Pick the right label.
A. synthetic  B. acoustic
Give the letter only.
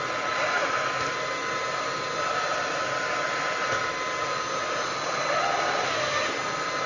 B